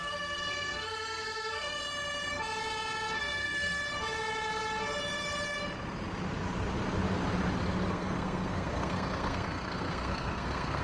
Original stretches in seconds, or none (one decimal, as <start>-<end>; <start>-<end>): 1.8-3.2; 3.8-7.9